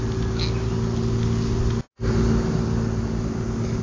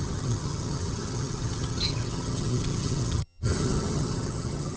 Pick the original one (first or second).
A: first